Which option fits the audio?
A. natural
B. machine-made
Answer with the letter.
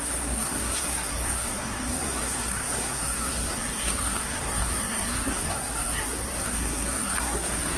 B